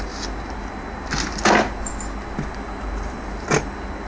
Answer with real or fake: real